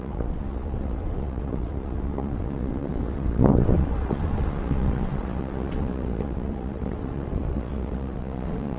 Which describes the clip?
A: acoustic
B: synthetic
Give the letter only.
B